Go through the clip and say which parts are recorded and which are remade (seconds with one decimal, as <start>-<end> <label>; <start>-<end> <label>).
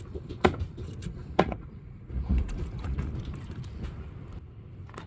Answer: 0.0-1.0 recorded; 1.0-3.1 remade; 3.1-5.1 recorded